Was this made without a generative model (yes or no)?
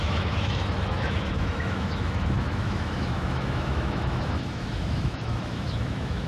no